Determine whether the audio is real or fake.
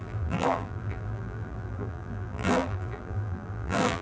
fake